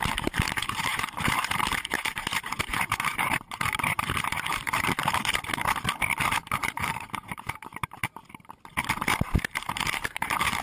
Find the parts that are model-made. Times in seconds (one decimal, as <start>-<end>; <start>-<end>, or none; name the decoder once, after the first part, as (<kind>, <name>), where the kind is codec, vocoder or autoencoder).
0.0-5.0 (vocoder, BigVGAN v2); 6.3-8.2; 9.2-10.6